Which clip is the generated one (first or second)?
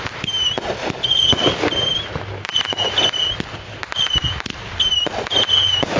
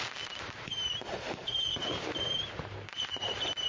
second